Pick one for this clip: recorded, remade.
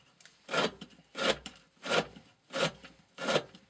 remade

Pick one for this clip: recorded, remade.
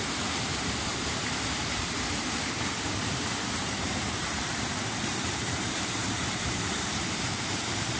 remade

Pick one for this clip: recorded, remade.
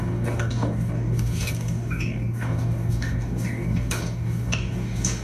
remade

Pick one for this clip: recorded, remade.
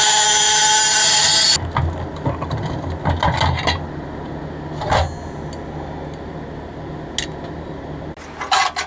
recorded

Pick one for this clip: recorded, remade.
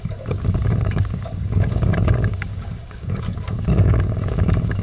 remade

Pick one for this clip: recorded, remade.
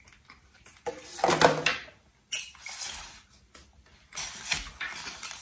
recorded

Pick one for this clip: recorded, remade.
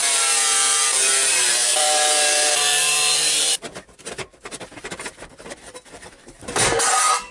remade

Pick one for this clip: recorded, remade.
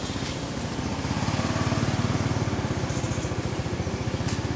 recorded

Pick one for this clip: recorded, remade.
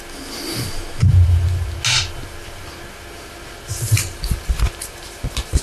recorded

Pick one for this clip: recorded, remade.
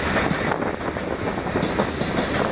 recorded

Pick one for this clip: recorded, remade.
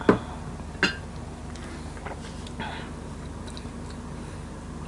recorded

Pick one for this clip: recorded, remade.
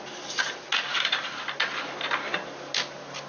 recorded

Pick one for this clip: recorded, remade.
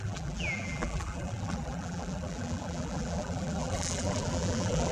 remade